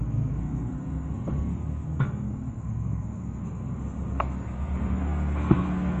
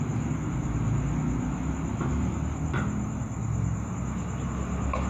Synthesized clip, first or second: first